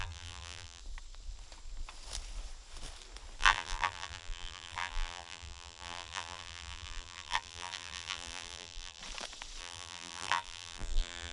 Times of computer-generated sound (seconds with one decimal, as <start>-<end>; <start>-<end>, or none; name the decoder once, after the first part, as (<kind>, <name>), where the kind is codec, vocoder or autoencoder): 0.0-0.8 (vocoder, BigVGAN v2); 3.4-9.0; 9.6-11.3